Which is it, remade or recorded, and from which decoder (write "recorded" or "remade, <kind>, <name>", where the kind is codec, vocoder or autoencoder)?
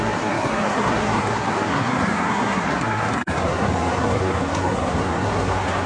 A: remade, codec, SNAC